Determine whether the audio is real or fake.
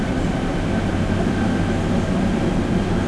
real